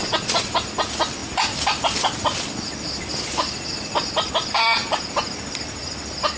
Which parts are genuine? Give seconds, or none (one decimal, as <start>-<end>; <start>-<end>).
0.0-6.4